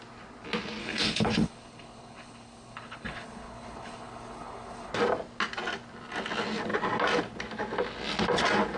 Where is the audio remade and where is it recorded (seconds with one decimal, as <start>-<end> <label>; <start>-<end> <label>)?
0.0-0.8 recorded; 0.8-4.9 remade; 4.9-8.8 recorded